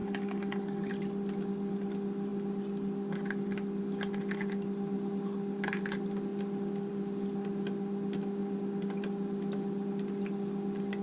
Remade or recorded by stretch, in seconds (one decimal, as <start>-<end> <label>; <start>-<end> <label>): 0.0-0.9 remade; 0.9-11.0 recorded